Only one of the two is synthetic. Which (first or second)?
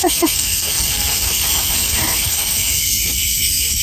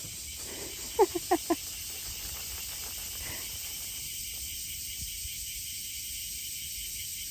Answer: first